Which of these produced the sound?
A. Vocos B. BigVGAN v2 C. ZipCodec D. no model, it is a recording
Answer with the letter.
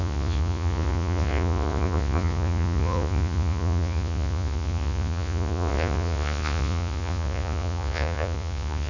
A